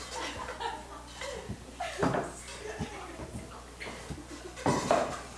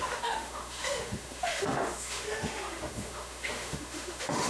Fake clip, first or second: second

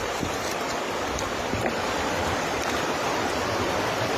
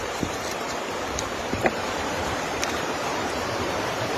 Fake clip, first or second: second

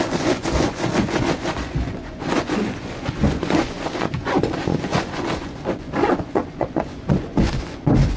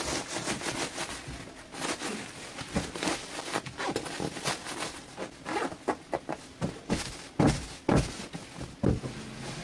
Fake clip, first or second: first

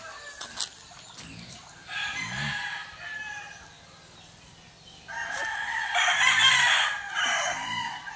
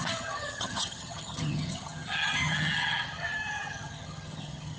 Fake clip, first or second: second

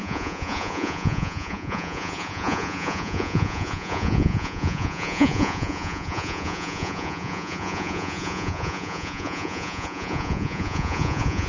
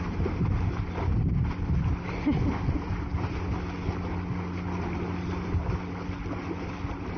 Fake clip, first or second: first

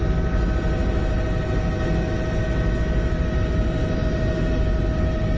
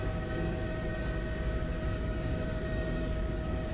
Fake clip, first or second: second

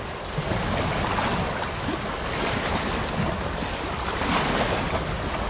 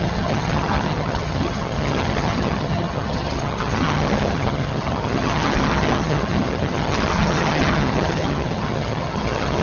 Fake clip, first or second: second